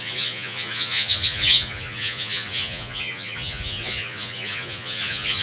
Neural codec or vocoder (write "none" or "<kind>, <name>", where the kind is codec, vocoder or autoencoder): vocoder, Vocos